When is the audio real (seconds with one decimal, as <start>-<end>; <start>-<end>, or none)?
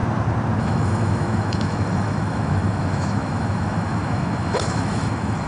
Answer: 0.0-0.6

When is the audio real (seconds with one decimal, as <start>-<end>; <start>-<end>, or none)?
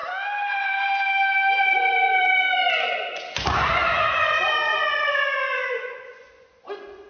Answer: 0.0-1.6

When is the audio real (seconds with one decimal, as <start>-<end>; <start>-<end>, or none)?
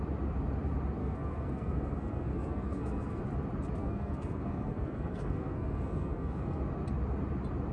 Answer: 0.0-1.0; 3.2-3.8; 6.6-7.7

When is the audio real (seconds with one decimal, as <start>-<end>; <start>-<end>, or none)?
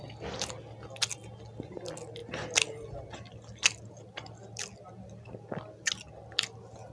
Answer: 0.0-6.9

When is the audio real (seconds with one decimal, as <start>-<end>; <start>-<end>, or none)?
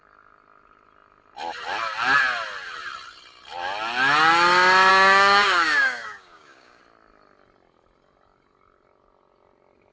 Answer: 0.0-4.9; 6.8-9.9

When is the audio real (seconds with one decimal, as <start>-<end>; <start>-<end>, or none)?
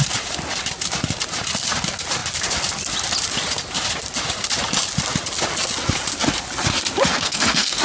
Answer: 0.0-7.1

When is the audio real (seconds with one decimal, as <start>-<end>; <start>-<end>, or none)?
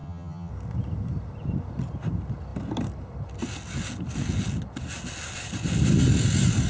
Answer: 0.5-6.7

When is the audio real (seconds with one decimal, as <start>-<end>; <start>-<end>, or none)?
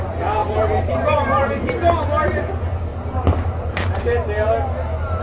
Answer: 0.0-0.4; 1.5-2.9; 4.0-5.2